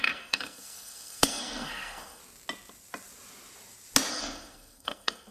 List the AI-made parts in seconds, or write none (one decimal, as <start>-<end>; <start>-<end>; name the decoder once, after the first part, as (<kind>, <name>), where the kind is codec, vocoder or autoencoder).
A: 0.0-2.2 (codec, SNAC); 4.1-5.3